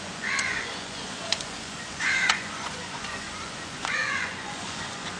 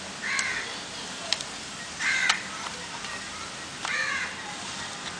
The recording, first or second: second